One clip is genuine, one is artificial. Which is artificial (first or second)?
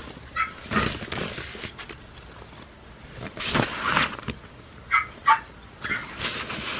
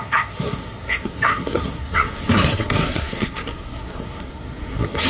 second